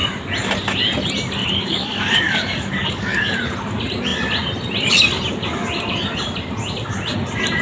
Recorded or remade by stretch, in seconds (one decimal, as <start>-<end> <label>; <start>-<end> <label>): 0.0-1.4 recorded; 1.4-3.4 remade; 3.4-7.6 recorded